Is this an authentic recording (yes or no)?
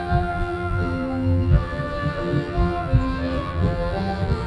no